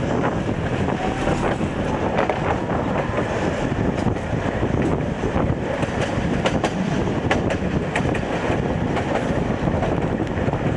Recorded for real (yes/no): yes